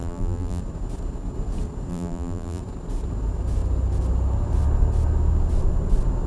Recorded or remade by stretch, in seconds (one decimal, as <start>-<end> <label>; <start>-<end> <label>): 0.0-0.6 remade; 0.6-1.9 recorded; 1.9-2.6 remade; 2.6-6.3 recorded